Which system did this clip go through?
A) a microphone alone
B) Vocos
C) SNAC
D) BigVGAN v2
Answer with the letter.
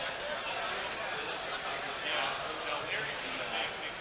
A